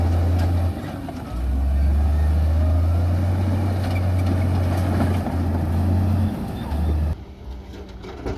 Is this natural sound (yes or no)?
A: yes